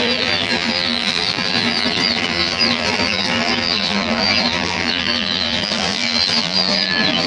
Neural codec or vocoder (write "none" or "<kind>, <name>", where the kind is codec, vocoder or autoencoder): vocoder, BigVGAN v2